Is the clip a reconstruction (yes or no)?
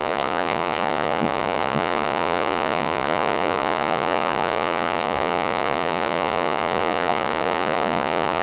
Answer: yes